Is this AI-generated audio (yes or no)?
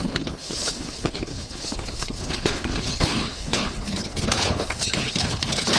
yes